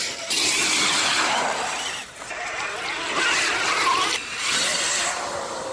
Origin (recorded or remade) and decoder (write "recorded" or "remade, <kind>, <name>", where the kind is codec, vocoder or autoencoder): recorded